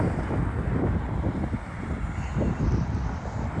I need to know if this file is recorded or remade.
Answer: recorded